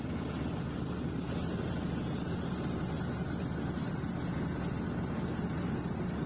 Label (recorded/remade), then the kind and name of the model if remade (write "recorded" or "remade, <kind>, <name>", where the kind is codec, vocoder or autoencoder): recorded